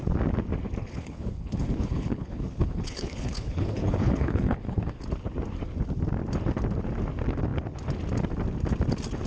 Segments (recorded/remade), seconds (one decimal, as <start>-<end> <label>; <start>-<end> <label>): 0.0-0.8 recorded; 0.8-5.0 remade; 5.0-9.3 recorded